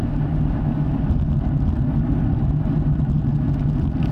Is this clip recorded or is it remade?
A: recorded